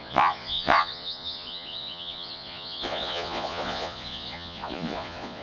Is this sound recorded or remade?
remade